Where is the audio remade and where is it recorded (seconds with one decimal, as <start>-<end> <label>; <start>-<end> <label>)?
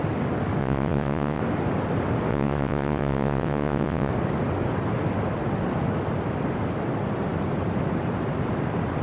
0.0-0.6 recorded; 0.6-1.4 remade; 1.4-2.3 recorded; 2.3-4.1 remade; 4.1-9.0 recorded